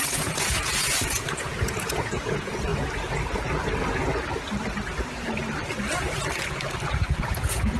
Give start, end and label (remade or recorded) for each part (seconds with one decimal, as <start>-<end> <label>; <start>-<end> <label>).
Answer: 0.0-2.7 remade; 2.7-7.2 recorded; 7.2-7.8 remade